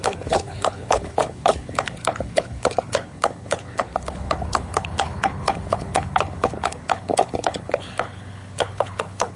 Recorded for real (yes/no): no